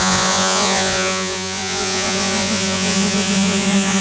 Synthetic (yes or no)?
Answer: yes